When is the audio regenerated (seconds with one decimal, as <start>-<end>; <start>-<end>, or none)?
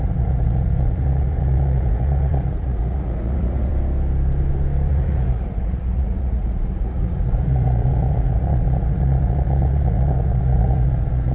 0.0-3.7; 4.9-11.3